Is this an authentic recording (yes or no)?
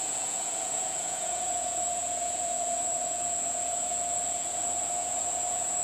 no